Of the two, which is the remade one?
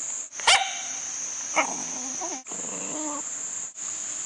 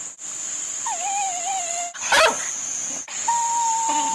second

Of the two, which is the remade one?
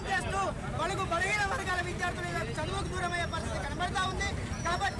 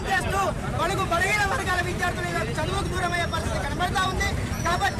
second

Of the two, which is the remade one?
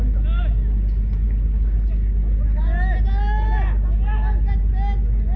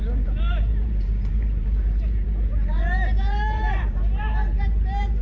second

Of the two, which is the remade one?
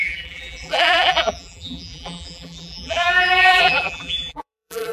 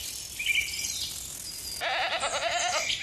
first